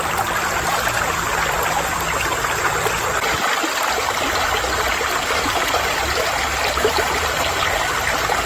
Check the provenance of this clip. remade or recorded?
recorded